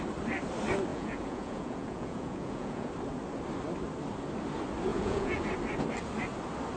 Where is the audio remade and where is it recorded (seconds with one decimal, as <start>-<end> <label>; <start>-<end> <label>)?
0.0-0.9 recorded; 0.9-2.9 remade; 2.9-4.9 recorded; 4.9-5.4 remade; 5.4-6.8 recorded